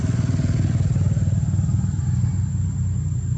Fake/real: real